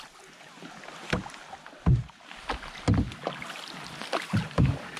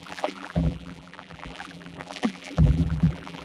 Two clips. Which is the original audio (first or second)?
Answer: first